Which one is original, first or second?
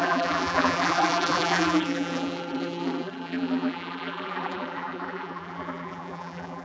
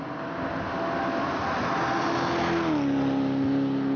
second